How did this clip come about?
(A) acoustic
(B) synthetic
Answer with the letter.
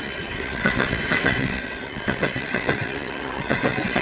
B